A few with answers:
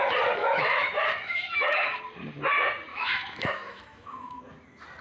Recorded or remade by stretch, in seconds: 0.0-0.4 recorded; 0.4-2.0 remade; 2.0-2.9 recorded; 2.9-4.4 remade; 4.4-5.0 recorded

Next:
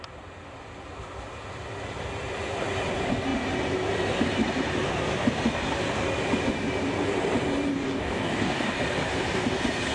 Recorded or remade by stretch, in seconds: 0.0-7.7 recorded; 7.7-8.8 remade; 8.8-9.9 recorded

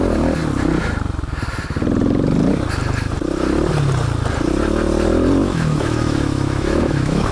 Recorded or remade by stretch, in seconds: 0.0-5.4 recorded; 5.4-7.3 remade

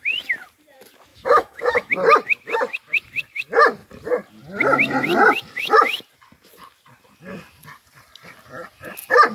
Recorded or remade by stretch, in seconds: 0.0-1.1 recorded; 1.1-1.9 remade; 1.9-9.3 recorded